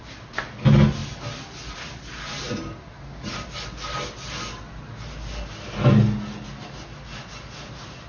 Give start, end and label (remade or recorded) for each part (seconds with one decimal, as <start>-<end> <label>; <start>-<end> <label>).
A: 0.0-8.1 recorded